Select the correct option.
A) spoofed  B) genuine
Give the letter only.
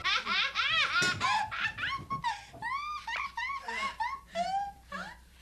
A